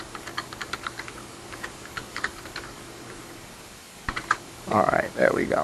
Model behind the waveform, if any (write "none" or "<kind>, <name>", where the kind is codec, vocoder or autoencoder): codec, DAC